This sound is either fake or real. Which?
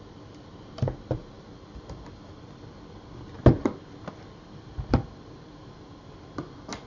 real